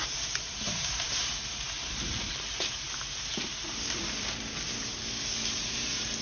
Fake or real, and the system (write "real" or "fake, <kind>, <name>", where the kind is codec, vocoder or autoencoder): fake, vocoder, BigVGAN v2